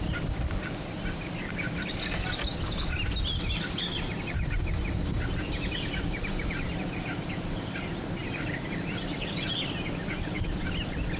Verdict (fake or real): real